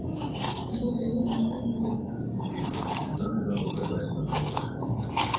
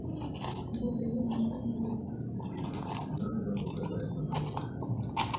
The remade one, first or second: first